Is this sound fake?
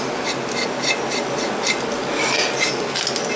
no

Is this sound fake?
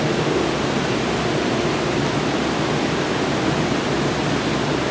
no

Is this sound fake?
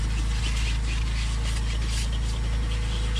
no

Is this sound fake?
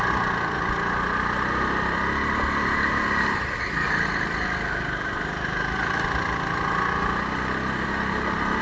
no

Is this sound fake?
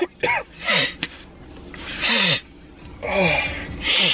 no